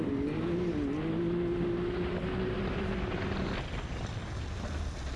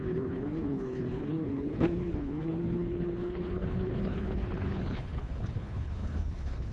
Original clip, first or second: first